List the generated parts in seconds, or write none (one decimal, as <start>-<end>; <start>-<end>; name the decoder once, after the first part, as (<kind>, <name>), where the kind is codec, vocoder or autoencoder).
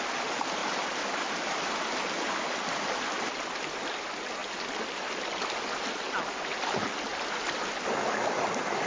0.6-3.0 (vocoder, BigVGAN v2); 7.1-7.9